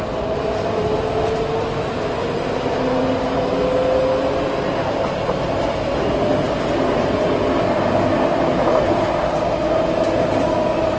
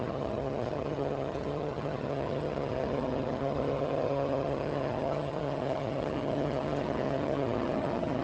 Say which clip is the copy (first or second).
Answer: second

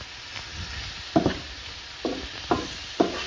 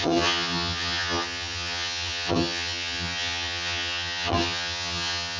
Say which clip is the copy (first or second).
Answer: second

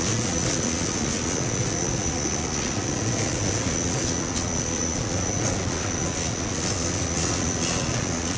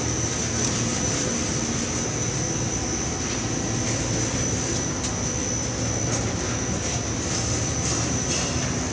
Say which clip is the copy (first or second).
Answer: first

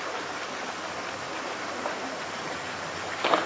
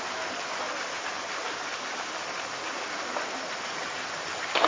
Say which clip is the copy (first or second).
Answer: first